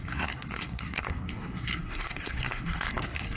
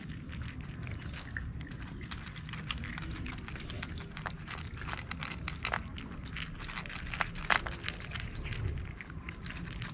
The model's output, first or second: first